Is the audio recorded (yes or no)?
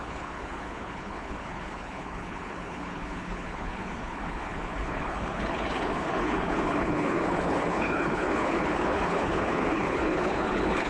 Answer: no